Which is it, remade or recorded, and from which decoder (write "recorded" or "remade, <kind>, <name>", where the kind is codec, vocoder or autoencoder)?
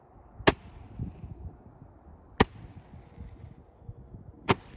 recorded